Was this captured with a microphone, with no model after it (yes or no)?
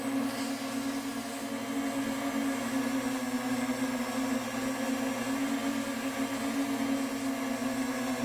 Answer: yes